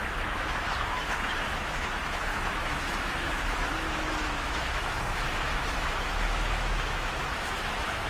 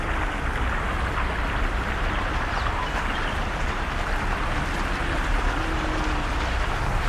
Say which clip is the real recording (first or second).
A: second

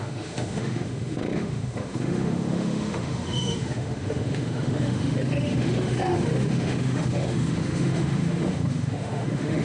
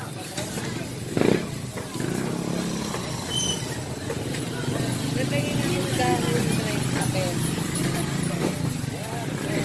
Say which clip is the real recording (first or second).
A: second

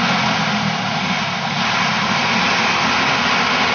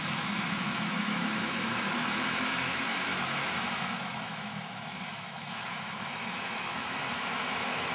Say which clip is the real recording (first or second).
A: first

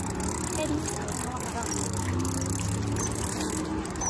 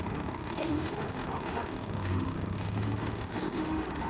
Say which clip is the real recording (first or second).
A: first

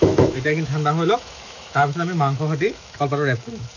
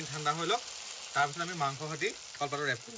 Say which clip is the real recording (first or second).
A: second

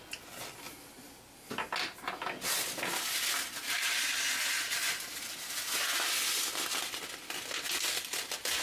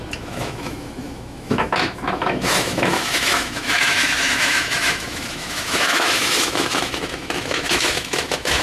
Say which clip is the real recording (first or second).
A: first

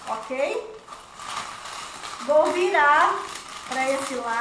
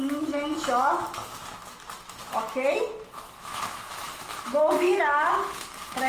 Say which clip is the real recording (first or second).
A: first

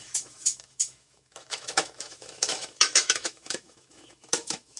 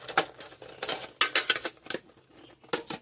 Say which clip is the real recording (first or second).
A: second